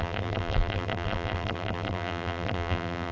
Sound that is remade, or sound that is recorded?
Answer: remade